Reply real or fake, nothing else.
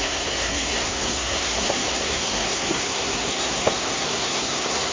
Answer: fake